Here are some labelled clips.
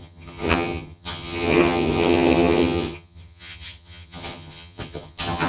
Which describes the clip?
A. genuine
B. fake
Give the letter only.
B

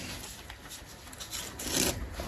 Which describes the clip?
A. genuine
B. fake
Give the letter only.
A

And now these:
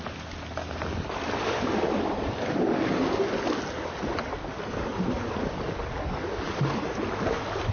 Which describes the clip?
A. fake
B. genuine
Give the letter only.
B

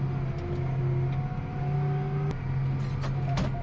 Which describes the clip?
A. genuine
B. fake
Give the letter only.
A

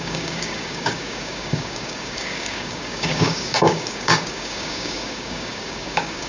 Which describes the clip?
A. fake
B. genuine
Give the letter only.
A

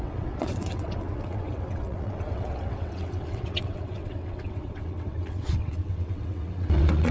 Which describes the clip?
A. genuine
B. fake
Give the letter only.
B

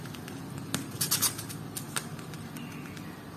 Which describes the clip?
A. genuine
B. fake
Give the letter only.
A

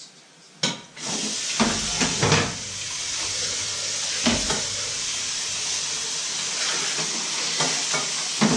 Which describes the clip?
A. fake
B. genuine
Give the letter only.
B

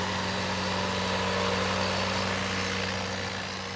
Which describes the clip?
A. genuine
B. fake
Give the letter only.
A